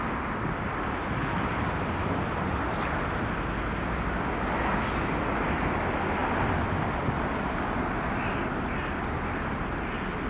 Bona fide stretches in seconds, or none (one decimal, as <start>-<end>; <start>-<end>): 0.0-10.3